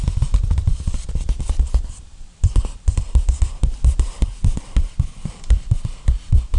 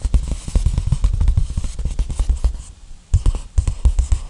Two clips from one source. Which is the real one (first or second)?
second